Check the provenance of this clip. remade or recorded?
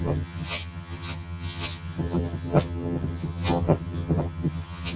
remade